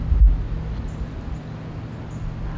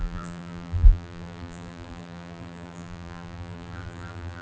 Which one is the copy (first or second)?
second